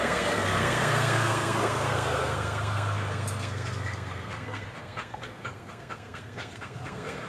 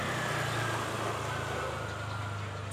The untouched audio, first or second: second